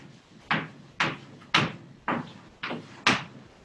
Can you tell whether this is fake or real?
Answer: real